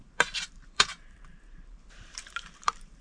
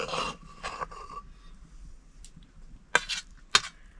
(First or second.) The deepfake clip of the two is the first